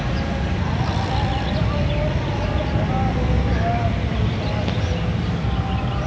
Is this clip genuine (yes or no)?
yes